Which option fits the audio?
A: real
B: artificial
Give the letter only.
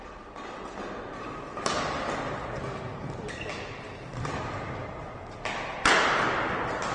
A